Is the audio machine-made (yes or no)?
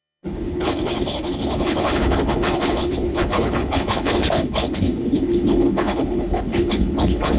yes